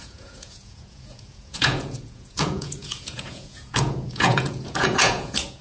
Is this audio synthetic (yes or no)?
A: yes